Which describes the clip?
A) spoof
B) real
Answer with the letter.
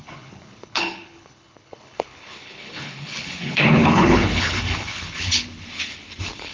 A